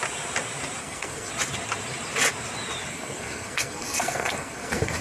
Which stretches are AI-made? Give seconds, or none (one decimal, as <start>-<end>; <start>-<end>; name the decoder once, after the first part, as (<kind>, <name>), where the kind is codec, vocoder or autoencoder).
0.8-1.3 (codec, SNAC); 2.9-5.0